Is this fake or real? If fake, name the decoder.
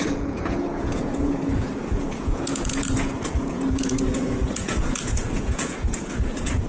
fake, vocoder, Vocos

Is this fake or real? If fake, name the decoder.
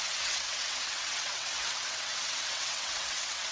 fake, vocoder, WaveNeXt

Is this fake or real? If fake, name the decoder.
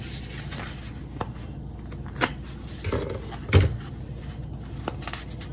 real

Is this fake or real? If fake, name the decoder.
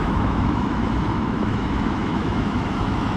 fake, autoencoder, DAC-VAE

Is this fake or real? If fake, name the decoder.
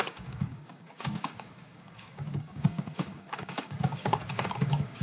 fake, codec, DAC